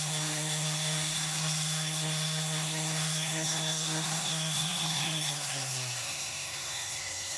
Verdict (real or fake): fake